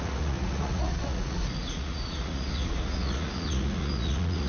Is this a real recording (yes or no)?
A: no